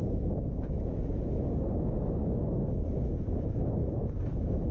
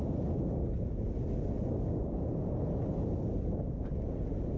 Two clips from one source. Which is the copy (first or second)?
first